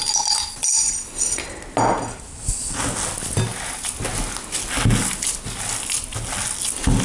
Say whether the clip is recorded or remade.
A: recorded